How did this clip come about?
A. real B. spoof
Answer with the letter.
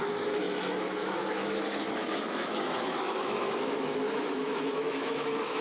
B